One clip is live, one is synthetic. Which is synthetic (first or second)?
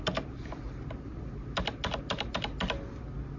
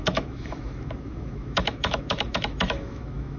second